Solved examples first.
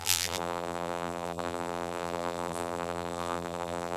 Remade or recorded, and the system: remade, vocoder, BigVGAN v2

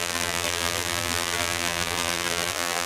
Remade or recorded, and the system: remade, vocoder, BigVGAN v2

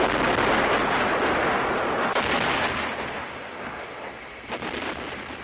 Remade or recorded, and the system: recorded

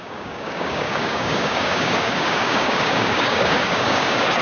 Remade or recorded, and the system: remade, codec, DAC